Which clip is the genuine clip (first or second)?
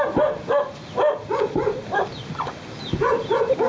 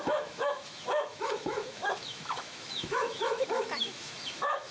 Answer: first